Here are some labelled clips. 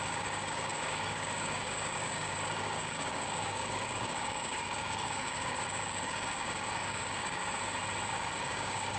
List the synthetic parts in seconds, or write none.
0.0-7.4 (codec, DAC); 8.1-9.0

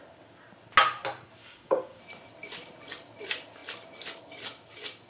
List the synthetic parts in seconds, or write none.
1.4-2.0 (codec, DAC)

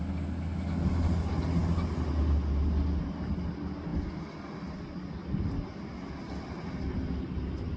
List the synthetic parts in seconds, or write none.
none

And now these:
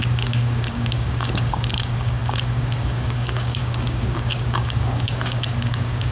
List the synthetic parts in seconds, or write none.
0.0-6.1 (codec, DAC)

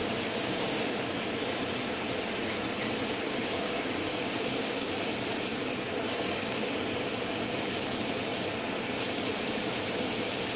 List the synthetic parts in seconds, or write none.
0.0-1.0 (codec, DAC); 3.5-4.9; 5.5-6.7

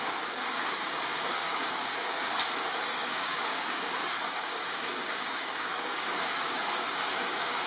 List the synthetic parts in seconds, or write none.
0.0-7.7 (codec, DAC)